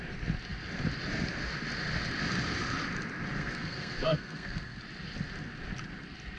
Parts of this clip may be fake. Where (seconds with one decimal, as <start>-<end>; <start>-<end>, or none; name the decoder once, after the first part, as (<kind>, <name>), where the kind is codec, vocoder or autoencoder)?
3.3-4.8 (codec, SNAC)